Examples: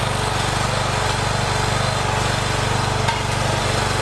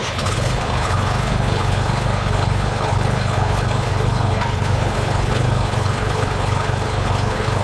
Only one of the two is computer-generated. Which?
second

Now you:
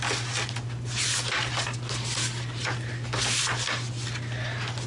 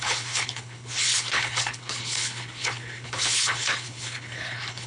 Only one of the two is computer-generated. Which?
second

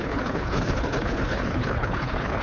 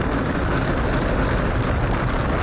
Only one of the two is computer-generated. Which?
first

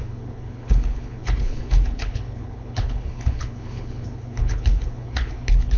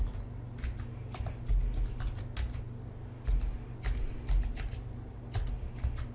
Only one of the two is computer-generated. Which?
first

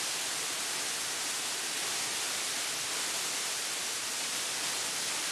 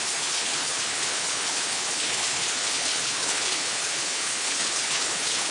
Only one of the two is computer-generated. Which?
second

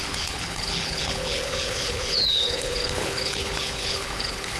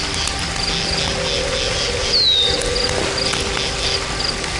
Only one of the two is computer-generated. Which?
first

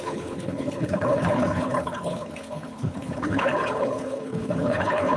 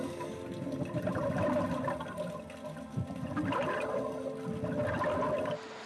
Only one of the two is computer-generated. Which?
first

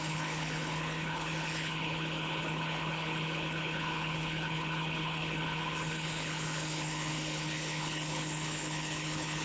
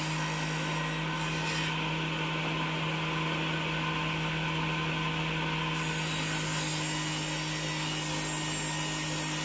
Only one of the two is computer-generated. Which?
first